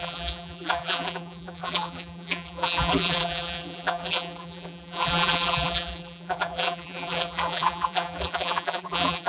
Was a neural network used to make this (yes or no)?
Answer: yes